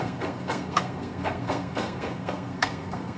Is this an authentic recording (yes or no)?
no